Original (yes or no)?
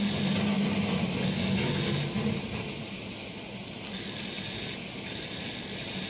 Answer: yes